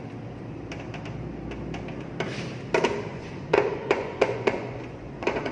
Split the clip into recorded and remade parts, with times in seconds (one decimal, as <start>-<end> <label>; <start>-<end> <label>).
0.0-3.1 recorded; 3.1-5.5 remade